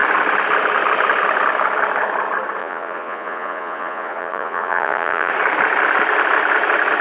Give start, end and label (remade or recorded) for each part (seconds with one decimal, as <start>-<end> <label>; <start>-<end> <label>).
0.0-2.6 recorded; 2.6-5.3 remade; 5.3-7.0 recorded